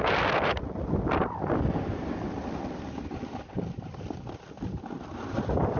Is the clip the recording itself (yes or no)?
yes